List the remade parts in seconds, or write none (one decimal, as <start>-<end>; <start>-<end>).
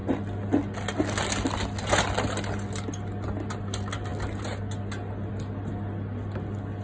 none